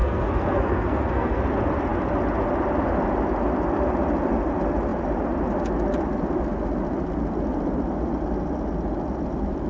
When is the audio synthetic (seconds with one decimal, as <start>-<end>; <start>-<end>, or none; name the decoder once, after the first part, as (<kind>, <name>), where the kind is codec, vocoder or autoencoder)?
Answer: 0.0-1.4 (codec, SNAC)